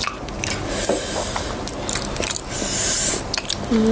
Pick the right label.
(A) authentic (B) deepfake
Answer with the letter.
A